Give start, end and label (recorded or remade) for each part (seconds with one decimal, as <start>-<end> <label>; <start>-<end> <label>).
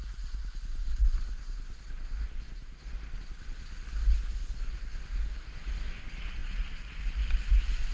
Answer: 0.0-5.3 recorded; 5.3-6.0 remade; 6.0-7.9 recorded